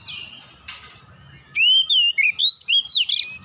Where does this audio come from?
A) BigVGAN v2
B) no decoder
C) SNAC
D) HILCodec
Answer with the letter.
B